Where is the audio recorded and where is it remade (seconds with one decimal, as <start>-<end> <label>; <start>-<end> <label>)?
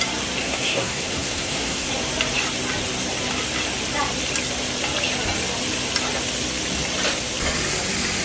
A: 0.0-0.4 recorded; 0.4-1.9 remade; 1.9-8.2 recorded